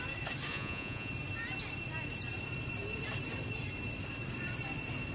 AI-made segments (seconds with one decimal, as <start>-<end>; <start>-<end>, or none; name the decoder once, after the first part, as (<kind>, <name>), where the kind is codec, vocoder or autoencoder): 0.5-1.1 (vocoder, Vocos)